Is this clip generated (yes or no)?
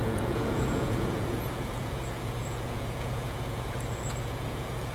yes